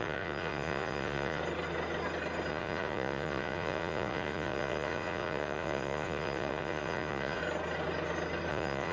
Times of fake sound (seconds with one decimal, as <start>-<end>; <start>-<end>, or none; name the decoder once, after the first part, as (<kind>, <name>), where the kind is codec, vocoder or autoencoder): 0.0-1.4 (vocoder, Vocos); 2.5-7.4; 8.5-8.9